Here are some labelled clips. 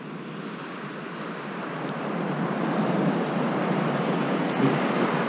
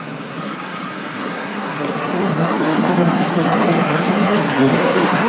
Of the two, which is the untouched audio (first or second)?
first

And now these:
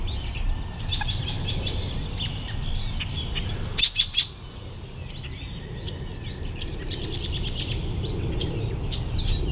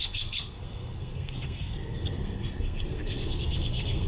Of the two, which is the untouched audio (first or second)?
first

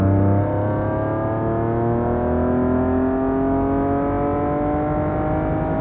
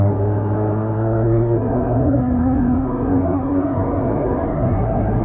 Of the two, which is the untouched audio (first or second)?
first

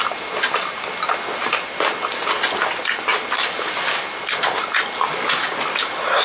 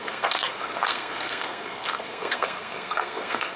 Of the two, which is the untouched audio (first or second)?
first